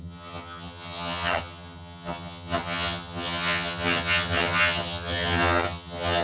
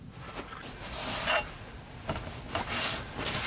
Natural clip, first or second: second